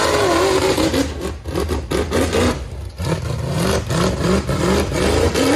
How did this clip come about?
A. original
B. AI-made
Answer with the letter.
A